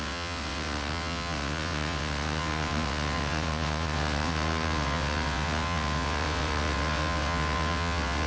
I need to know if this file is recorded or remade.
remade